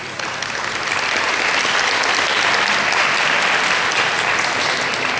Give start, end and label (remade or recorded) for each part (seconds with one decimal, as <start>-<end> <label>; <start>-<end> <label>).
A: 0.0-5.2 recorded